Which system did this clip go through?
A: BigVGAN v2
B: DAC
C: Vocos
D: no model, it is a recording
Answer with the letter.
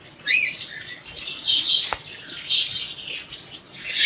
D